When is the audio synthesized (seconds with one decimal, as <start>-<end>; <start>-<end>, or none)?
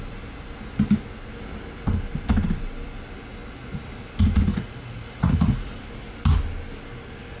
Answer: 4.5-5.9